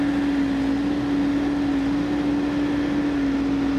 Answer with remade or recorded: recorded